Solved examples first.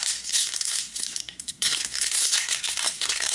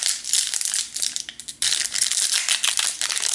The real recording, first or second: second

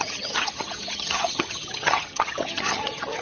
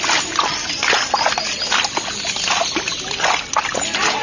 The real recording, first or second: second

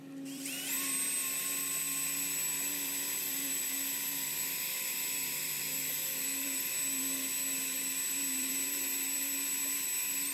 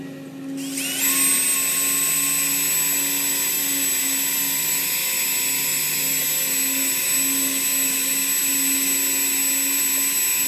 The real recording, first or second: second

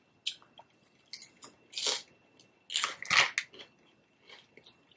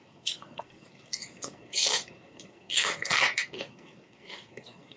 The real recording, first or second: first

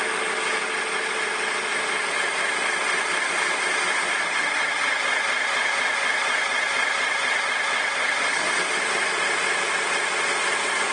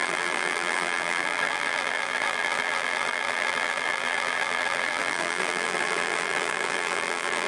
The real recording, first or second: first